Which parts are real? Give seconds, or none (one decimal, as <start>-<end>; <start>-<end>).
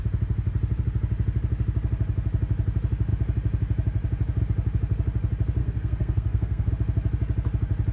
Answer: 0.0-5.6; 6.7-7.9